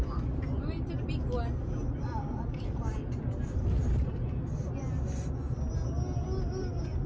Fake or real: real